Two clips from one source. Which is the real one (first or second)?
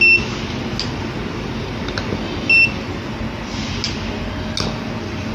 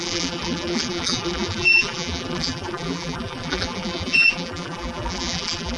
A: first